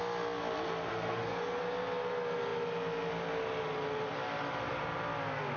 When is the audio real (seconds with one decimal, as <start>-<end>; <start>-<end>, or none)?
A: 0.0-0.9; 1.6-5.6